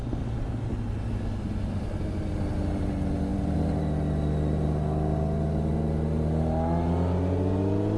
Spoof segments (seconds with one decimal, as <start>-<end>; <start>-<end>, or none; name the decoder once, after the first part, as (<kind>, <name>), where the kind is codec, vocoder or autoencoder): none